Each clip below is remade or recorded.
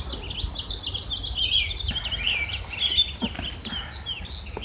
recorded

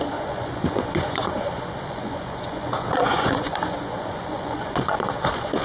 remade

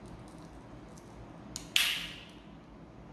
recorded